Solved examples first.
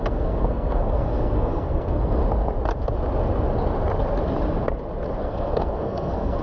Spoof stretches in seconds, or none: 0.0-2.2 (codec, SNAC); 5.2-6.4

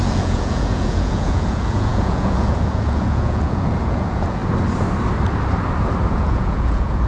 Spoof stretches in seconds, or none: 0.0-4.4 (vocoder, Vocos); 6.1-7.1

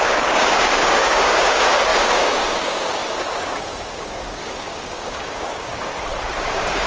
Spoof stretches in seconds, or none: 0.0-5.9 (codec, DAC); 6.4-6.9

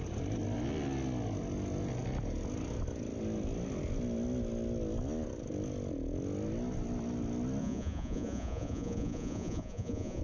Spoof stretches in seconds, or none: 7.6-10.2 (vocoder, Vocos)